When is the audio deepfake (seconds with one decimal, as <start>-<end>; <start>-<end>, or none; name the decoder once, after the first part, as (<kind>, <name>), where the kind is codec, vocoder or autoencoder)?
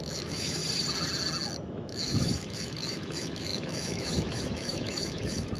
0.0-0.6 (autoencoder, DAC-VAE); 1.6-5.6